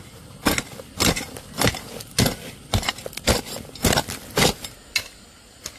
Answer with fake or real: real